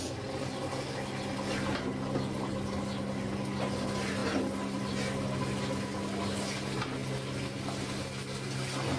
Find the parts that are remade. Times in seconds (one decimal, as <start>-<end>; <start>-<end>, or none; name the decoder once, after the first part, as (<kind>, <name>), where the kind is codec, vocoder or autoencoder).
none